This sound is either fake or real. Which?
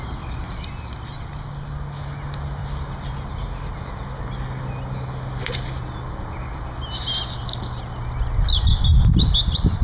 real